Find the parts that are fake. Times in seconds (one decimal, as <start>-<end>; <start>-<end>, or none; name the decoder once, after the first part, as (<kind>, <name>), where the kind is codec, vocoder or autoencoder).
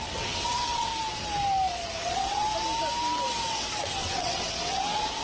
0.0-0.9 (vocoder, WaveNeXt); 2.0-2.5; 3.5-5.2